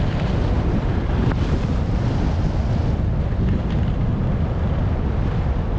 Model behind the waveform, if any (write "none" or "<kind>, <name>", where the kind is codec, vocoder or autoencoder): none